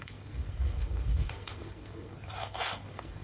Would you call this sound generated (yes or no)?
yes